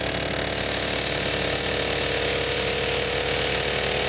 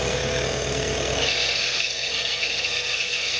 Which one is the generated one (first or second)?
second